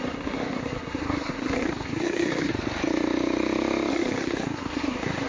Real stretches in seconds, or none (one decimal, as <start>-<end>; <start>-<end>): 2.5-3.9